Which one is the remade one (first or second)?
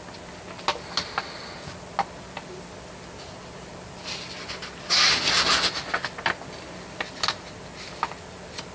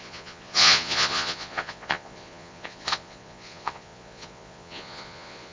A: second